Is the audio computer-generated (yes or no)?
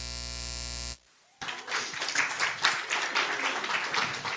no